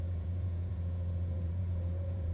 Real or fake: fake